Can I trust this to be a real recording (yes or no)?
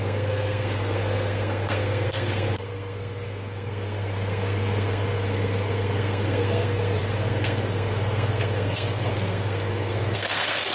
no